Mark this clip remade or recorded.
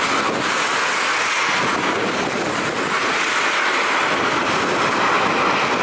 recorded